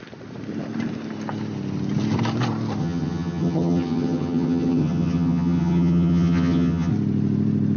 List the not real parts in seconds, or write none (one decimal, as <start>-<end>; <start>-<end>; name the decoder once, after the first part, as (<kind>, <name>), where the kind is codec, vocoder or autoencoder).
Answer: 2.8-6.9 (vocoder, HiFi-GAN)